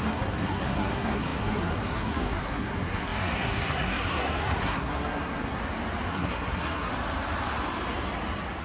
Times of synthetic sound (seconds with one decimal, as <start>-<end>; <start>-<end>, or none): 0.0-5.6; 6.1-6.9